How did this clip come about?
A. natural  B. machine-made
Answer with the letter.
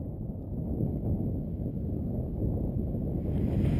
A